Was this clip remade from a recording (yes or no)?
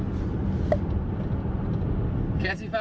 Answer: no